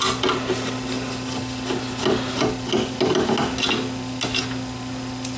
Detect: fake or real real